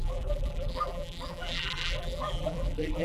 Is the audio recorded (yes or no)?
no